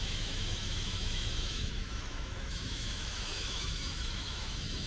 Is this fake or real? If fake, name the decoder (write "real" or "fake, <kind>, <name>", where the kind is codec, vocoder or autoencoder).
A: fake, autoencoder, DAC-VAE